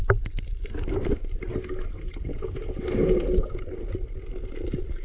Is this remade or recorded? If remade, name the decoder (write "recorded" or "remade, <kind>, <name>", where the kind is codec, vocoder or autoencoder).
recorded